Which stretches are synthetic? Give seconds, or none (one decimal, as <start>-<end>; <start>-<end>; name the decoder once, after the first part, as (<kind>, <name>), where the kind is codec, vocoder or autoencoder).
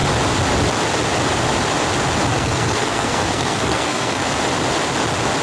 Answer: 2.3-4.2 (codec, SNAC)